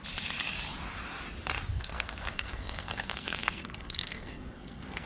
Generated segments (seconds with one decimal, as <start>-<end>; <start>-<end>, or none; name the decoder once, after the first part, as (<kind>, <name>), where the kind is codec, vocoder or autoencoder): 1.7-5.1 (codec, SNAC)